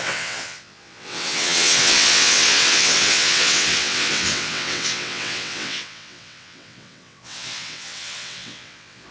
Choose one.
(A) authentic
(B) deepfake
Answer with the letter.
B